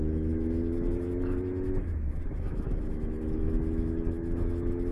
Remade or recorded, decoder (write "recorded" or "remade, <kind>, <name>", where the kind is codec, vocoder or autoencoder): remade, autoencoder, DAC-VAE